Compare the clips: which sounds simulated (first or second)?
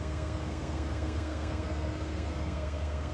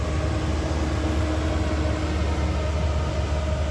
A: first